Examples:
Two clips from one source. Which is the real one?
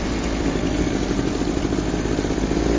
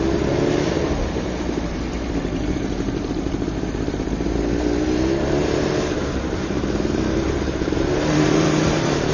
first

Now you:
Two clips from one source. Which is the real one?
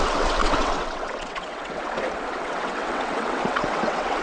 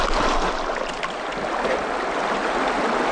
second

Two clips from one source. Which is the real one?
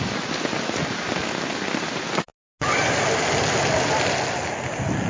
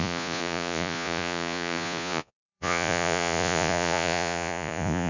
first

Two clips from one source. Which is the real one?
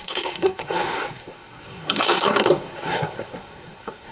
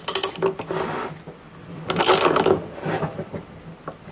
second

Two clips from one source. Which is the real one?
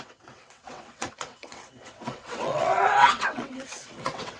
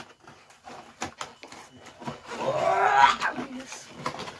second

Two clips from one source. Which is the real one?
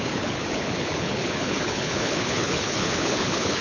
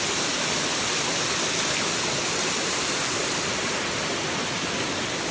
second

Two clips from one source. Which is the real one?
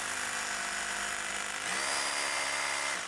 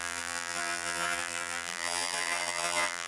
first